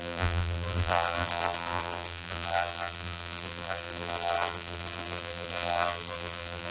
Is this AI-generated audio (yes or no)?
yes